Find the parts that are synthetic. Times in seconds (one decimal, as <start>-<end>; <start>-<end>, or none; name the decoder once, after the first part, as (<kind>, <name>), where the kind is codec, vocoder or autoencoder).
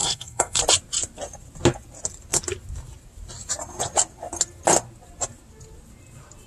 0.0-0.6 (codec, SNAC)